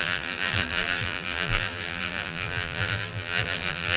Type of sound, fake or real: fake